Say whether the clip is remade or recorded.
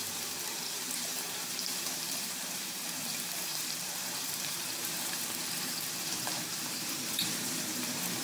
remade